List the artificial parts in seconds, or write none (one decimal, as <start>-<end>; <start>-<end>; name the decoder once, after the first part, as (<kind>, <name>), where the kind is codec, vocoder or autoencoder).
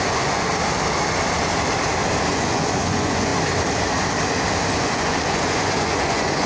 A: 0.0-0.5 (vocoder, Vocos); 2.3-3.3; 4.7-6.5